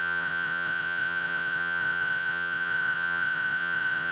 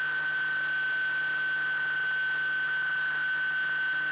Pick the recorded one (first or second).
second